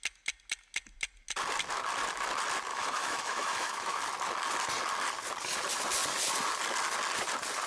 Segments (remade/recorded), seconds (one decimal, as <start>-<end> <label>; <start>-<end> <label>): 0.0-2.7 recorded; 2.7-4.0 remade; 4.0-7.7 recorded